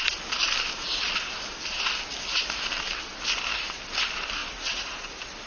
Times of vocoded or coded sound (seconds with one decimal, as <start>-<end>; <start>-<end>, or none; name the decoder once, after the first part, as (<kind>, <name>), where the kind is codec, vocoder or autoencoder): none